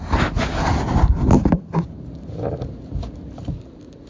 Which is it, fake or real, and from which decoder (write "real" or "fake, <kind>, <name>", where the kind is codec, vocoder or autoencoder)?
real